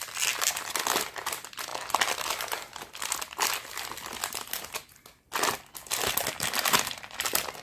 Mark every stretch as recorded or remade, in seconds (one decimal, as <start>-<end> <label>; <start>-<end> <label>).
0.0-7.6 recorded